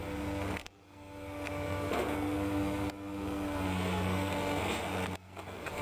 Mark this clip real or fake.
fake